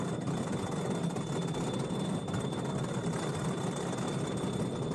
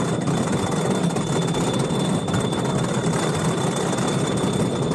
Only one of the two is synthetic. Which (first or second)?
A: second